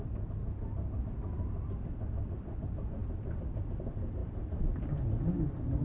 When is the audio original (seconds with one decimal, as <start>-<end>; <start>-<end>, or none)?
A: 0.0-5.8